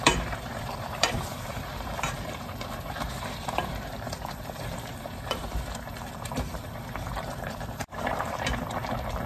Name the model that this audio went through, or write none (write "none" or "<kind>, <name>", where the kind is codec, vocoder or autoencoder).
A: vocoder, BigVGAN v2